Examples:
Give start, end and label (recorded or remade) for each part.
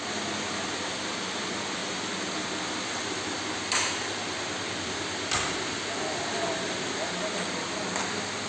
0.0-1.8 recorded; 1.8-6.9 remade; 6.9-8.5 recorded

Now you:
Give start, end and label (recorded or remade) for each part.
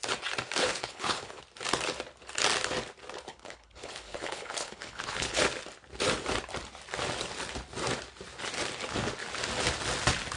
0.0-0.6 recorded; 0.6-1.4 remade; 1.4-3.3 recorded; 3.3-5.4 remade; 5.4-10.4 recorded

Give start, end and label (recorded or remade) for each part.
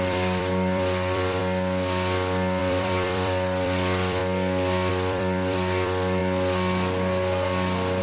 0.0-1.4 remade; 1.4-2.6 recorded; 2.6-4.2 remade; 4.2-4.9 recorded; 4.9-6.2 remade; 6.2-8.0 recorded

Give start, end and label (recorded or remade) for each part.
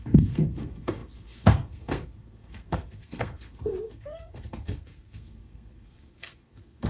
0.0-6.9 remade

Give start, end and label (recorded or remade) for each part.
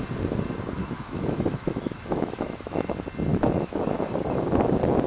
0.0-0.8 recorded; 0.8-2.9 remade; 2.9-3.3 recorded; 3.3-4.1 remade; 4.1-5.1 recorded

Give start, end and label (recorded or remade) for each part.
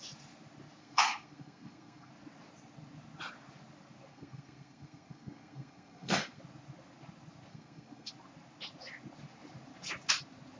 0.0-0.8 recorded; 0.8-2.1 remade; 2.1-4.1 recorded; 4.1-6.4 remade; 6.4-7.5 recorded; 7.5-8.1 remade; 8.1-10.6 recorded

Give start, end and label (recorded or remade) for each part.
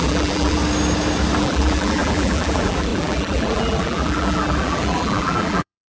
0.0-0.6 remade; 0.6-1.4 recorded; 1.4-6.0 remade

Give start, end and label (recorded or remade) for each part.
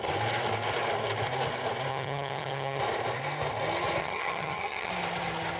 0.0-1.9 recorded; 1.9-2.8 remade; 2.8-4.0 recorded; 4.0-4.9 remade; 4.9-5.6 recorded